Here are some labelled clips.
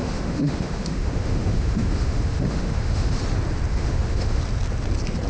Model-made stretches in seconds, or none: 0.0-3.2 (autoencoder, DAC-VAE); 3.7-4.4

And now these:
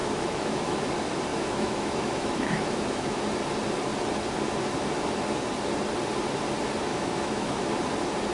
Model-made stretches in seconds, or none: 0.0-0.9 (autoencoder, DAC-VAE); 1.3-3.2; 6.9-7.6